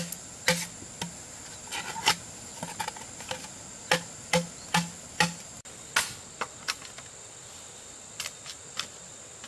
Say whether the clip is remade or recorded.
recorded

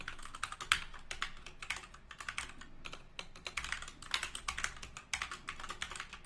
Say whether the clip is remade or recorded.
recorded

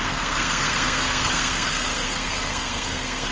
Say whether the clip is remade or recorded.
remade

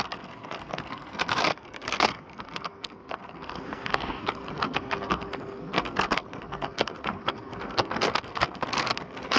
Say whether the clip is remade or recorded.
remade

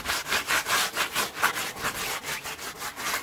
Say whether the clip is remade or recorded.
recorded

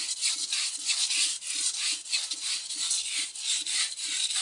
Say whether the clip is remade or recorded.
recorded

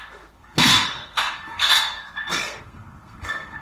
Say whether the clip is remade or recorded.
remade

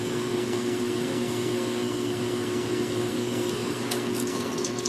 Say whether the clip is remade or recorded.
remade